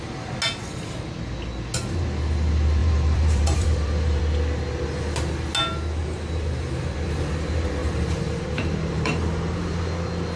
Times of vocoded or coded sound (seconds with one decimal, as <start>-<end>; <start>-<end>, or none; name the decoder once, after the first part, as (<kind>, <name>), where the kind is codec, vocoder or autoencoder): 2.8-4.2 (vocoder, BigVGAN v2); 7.8-9.9